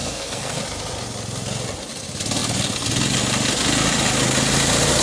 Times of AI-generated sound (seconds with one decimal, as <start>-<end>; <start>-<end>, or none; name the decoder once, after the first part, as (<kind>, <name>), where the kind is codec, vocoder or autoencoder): 0.0-0.6 (codec, SNAC)